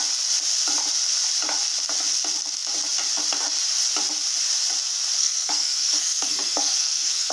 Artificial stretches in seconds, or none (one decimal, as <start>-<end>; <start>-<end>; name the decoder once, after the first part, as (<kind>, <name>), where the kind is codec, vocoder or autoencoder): 5.2-7.3 (codec, SNAC)